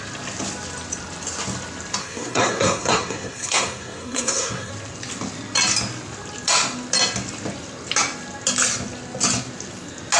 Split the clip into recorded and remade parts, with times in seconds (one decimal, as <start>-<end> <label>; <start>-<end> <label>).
0.0-2.0 recorded; 2.0-4.7 remade; 4.7-10.2 recorded